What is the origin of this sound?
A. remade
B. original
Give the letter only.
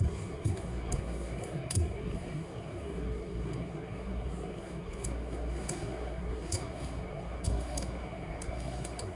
A